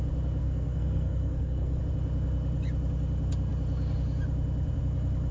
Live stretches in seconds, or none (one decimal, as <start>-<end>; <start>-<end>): 0.0-0.4; 1.8-5.3